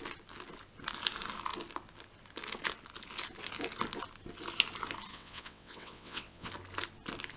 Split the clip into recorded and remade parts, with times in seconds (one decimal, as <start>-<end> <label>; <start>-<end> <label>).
0.0-5.1 recorded; 5.1-6.5 remade; 6.5-7.4 recorded